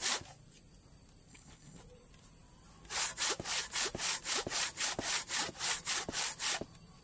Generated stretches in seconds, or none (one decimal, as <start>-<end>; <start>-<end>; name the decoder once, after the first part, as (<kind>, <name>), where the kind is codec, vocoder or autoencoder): 1.3-1.8 (codec, HILCodec)